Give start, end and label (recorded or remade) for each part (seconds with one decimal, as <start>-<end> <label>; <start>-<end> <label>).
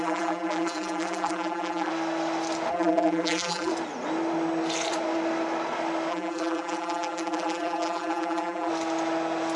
0.0-1.9 remade; 1.9-2.7 recorded; 2.7-3.7 remade; 3.7-6.1 recorded; 6.1-8.7 remade; 8.7-9.6 recorded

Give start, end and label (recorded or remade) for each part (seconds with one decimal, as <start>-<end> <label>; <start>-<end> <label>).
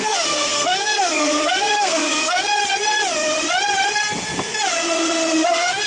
0.0-2.5 remade; 2.5-5.5 recorded; 5.5-5.9 remade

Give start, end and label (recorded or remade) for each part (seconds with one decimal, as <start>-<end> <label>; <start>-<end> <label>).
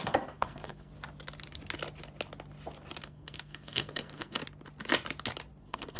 0.0-0.9 remade; 0.9-3.0 recorded; 3.0-4.4 remade; 4.4-5.6 recorded; 5.6-6.0 remade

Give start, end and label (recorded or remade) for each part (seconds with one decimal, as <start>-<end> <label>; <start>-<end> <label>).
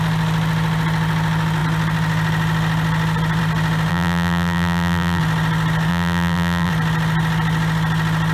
0.0-3.9 recorded; 3.9-5.2 remade; 5.2-5.9 recorded; 5.9-6.7 remade; 6.7-8.3 recorded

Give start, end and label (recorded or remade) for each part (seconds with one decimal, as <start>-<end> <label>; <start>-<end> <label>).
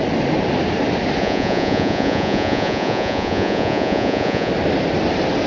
0.0-1.2 recorded; 1.2-4.5 remade; 4.5-5.5 recorded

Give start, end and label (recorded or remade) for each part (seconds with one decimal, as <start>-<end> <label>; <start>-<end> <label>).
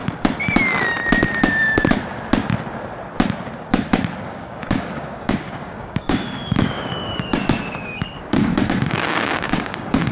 0.0-4.2 recorded; 4.2-10.1 remade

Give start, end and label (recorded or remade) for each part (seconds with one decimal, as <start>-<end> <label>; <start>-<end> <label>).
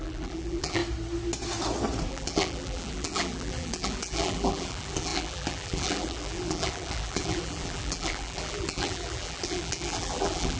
0.0-0.8 remade; 0.8-2.1 recorded; 2.1-10.6 remade